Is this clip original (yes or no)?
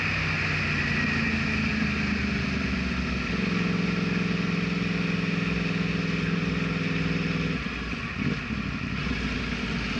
yes